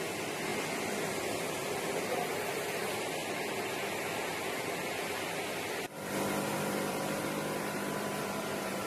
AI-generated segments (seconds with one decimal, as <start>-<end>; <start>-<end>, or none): 0.0-0.5; 1.1-3.2; 4.8-8.9